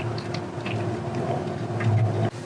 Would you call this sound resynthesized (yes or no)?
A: no